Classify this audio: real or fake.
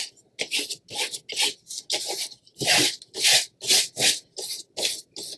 real